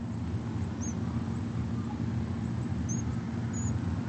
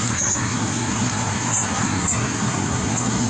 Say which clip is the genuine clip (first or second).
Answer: first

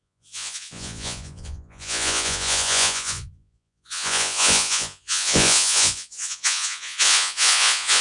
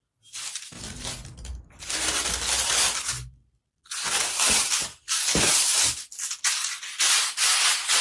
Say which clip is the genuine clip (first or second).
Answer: second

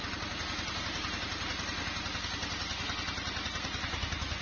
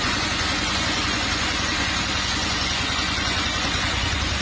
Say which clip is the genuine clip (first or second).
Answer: first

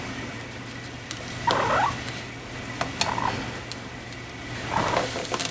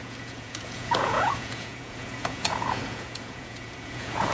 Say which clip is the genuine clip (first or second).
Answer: first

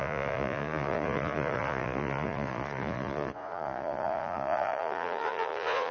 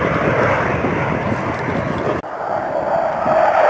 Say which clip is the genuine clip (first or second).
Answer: second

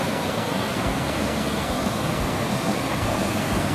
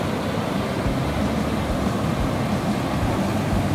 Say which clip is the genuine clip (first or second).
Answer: second